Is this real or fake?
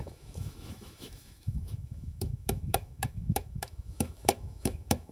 fake